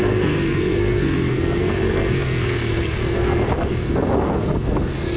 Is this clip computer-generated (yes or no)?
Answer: yes